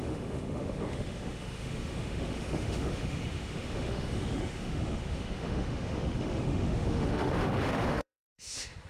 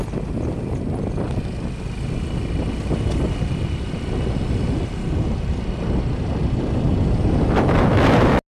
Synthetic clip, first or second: first